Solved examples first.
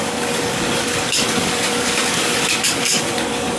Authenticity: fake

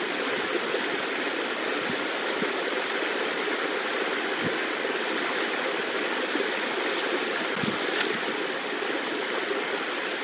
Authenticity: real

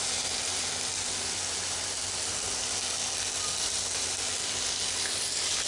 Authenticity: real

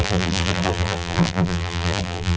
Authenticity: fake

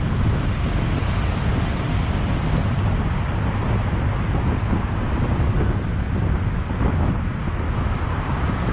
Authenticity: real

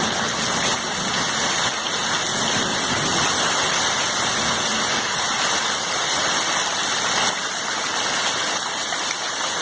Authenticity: real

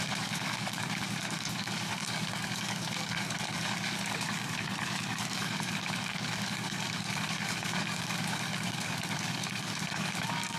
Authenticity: fake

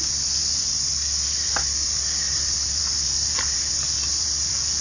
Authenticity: fake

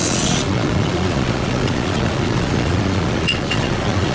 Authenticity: fake